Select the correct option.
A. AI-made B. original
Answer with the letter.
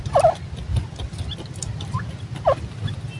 B